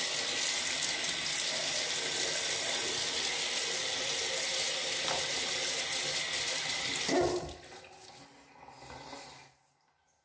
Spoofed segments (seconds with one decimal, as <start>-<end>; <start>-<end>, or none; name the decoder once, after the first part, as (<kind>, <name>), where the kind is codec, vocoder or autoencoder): none